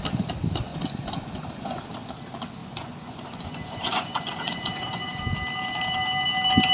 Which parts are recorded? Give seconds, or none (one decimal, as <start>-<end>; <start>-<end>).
0.0-0.7; 1.8-2.6; 5.2-6.7